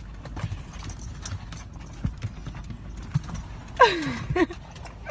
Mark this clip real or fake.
real